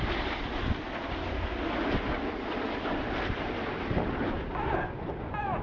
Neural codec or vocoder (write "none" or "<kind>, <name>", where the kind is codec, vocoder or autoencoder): none